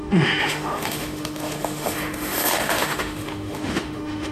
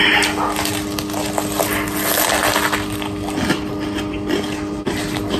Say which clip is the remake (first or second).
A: first